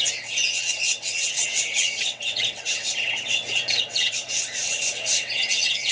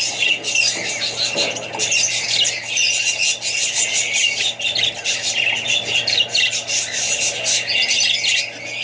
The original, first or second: second